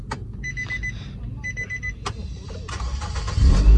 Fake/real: real